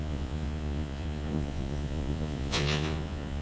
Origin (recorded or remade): remade